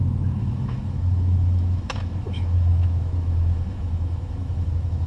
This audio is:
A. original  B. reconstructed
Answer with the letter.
B